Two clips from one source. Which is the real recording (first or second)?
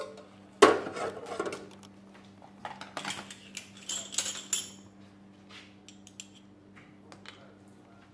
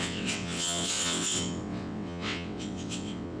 first